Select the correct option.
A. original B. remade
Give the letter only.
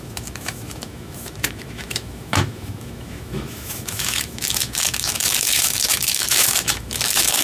B